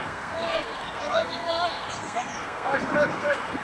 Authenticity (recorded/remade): remade